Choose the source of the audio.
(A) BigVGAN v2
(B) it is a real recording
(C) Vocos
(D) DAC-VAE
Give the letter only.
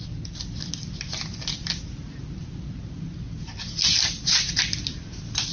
B